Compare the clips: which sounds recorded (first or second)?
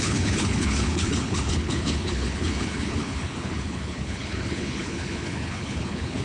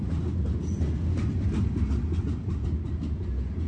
second